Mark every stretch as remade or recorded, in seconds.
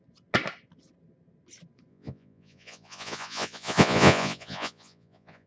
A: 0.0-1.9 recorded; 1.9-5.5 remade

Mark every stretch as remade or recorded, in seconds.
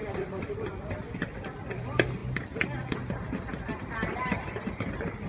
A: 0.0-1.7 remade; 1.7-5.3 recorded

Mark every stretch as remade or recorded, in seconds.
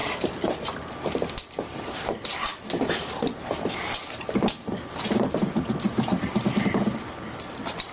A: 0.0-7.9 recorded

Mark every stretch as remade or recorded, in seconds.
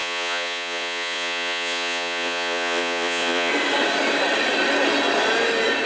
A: 0.0-3.5 remade; 3.5-5.9 recorded